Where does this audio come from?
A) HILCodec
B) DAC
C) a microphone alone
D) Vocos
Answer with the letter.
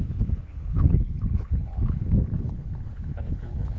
A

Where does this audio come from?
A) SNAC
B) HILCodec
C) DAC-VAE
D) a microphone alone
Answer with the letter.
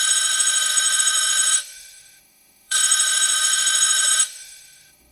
C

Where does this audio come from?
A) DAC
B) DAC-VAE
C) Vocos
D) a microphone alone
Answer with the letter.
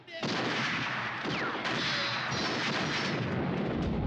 D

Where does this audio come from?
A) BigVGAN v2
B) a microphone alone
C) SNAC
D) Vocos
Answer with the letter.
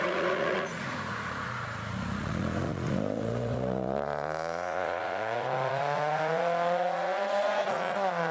D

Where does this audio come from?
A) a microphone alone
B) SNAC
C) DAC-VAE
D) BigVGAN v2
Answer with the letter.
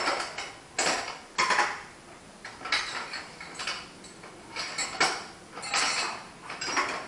A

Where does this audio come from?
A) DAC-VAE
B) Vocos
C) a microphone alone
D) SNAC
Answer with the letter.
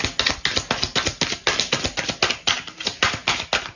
C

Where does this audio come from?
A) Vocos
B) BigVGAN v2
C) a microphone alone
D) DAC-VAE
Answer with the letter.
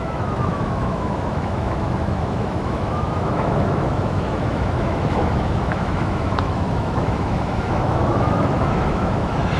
D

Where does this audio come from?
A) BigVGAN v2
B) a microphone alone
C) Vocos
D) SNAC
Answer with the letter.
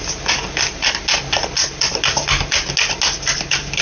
B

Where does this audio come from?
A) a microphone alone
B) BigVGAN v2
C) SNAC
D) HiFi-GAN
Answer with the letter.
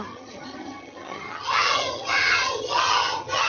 D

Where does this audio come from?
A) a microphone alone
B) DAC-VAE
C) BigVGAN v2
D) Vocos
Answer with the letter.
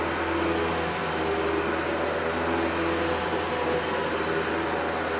A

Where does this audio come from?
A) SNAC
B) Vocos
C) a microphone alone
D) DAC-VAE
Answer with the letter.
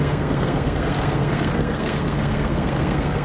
A